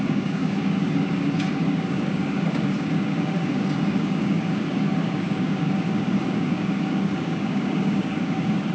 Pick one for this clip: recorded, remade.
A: remade